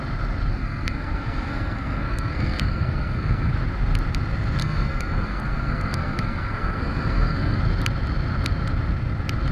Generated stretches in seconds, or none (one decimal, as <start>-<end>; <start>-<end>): 0.5-3.5; 4.6-7.6

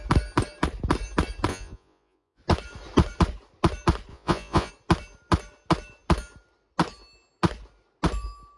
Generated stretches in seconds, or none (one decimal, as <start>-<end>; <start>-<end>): 1.5-2.4; 4.1-4.7

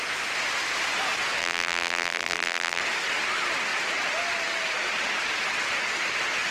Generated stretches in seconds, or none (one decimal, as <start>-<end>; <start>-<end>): 1.4-2.8

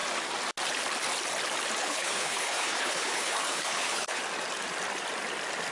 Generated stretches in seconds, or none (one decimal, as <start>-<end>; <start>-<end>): 1.8-4.2